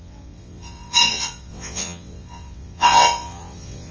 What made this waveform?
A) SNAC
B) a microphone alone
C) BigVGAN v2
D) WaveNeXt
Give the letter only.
D